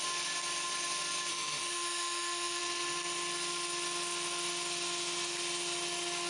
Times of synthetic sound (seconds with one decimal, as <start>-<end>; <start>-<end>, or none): 1.3-2.6